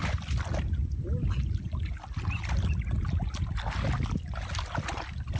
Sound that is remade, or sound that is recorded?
recorded